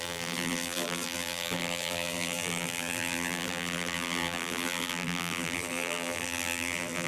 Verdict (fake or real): fake